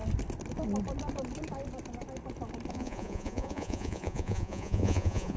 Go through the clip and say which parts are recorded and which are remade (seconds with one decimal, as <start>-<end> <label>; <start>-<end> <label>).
0.0-2.7 recorded; 2.7-5.4 remade